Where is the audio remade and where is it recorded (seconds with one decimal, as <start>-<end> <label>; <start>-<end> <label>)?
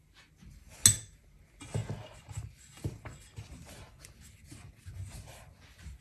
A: 0.0-6.0 recorded